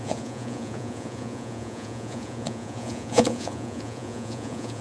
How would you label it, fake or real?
fake